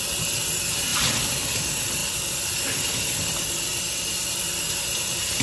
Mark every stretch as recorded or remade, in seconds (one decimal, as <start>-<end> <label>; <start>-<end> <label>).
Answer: 0.0-5.4 recorded